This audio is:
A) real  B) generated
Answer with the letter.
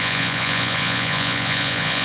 B